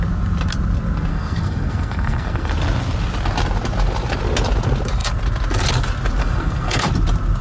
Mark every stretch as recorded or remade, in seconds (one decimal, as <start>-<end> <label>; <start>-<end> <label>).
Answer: 0.0-1.1 recorded; 1.1-2.5 remade; 2.5-6.2 recorded; 6.2-6.9 remade; 6.9-7.4 recorded

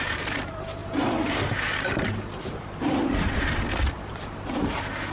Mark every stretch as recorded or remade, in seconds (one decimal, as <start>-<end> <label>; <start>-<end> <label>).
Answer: 0.0-0.8 recorded; 0.8-3.9 remade; 3.9-5.1 recorded

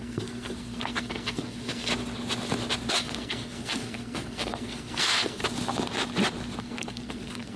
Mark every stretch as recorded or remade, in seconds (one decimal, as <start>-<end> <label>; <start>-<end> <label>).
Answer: 0.0-1.9 remade; 1.9-2.9 recorded; 2.9-5.4 remade; 5.4-6.6 recorded; 6.6-7.6 remade